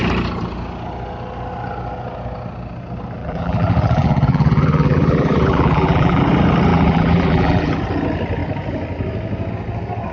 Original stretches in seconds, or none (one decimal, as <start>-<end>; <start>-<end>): 0.0-3.2; 6.2-6.7; 7.8-10.1